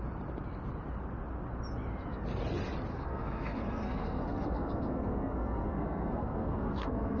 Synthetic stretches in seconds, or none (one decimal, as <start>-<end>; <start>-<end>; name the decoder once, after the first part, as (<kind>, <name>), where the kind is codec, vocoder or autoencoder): 2.9-7.2 (codec, SNAC)